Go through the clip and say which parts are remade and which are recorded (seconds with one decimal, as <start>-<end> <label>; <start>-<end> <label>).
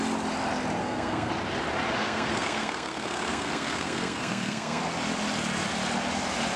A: 0.0-0.8 recorded; 0.8-1.3 remade; 1.3-2.0 recorded; 2.0-4.8 remade; 4.8-6.6 recorded